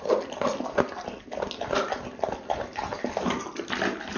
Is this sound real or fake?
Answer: real